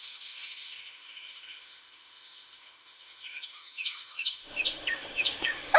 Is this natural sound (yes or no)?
no